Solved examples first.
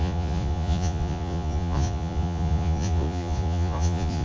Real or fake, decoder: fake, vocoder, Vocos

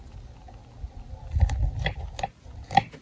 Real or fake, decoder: real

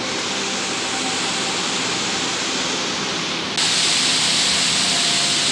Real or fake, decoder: real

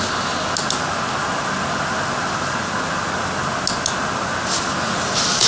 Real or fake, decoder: real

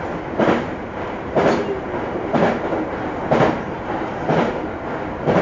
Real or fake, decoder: real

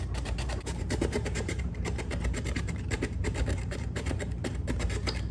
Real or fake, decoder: fake, vocoder, BigVGAN v2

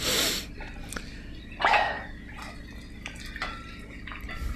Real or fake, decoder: real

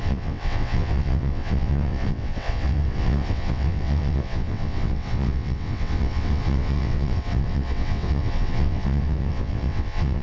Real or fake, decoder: fake, vocoder, WaveNeXt